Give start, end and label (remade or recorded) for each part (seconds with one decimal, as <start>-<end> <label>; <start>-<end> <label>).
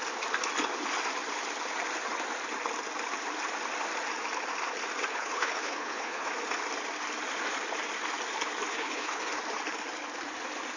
0.0-5.1 recorded; 5.1-6.3 remade; 6.3-8.7 recorded; 8.7-9.3 remade; 9.3-10.8 recorded